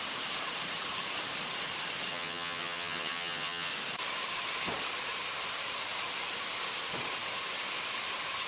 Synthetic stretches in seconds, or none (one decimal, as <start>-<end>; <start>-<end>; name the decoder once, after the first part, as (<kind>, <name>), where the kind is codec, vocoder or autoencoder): 2.1-3.7 (vocoder, HiFi-GAN)